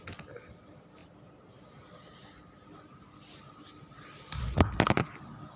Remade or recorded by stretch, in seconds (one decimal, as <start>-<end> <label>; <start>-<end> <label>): 0.0-5.6 remade